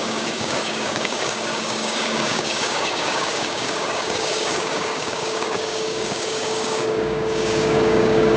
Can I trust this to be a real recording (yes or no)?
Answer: no